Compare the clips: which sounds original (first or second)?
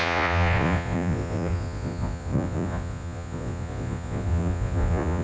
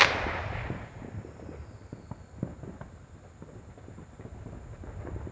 second